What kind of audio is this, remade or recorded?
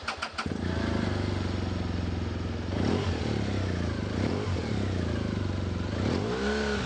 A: recorded